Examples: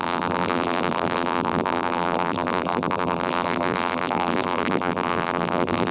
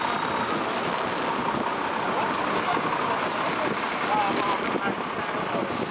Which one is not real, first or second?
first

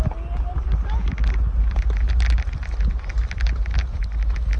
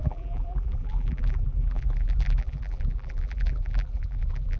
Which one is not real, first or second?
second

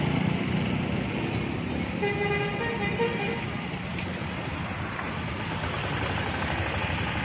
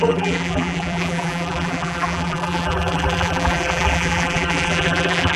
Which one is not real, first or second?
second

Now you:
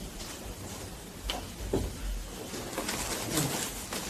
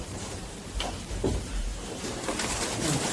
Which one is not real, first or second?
second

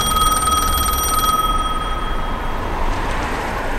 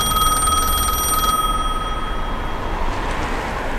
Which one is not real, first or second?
first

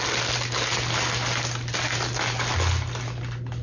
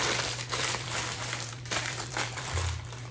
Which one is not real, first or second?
second